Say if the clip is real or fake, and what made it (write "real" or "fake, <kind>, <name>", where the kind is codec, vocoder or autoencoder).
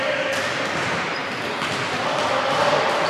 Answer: fake, vocoder, BigVGAN v2